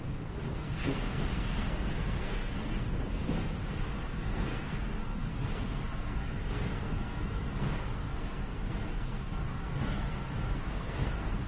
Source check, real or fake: fake